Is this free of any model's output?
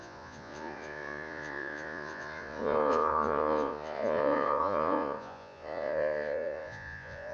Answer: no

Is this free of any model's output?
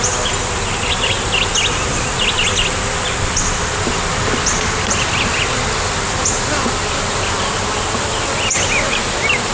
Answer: yes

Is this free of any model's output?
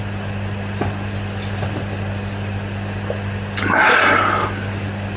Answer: yes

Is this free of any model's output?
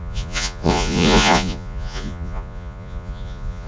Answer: no